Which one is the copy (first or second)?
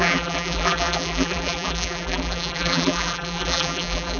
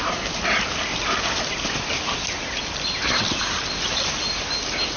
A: first